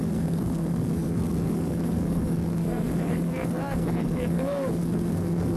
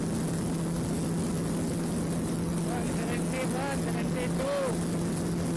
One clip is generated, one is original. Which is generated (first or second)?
first